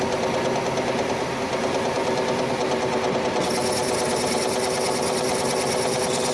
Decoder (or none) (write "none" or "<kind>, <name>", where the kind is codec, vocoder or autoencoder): none